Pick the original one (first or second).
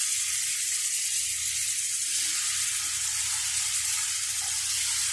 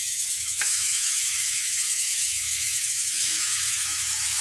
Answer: first